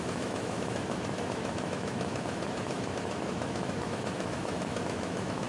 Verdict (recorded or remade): remade